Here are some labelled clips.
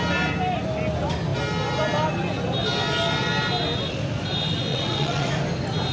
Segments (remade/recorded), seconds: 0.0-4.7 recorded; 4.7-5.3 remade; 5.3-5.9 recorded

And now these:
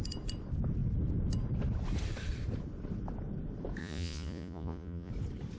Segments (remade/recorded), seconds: 0.0-3.8 recorded; 3.8-5.1 remade; 5.1-5.6 recorded

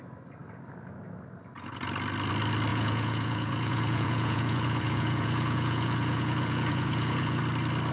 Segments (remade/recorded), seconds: 0.0-2.7 recorded; 2.7-7.4 remade; 7.4-7.9 recorded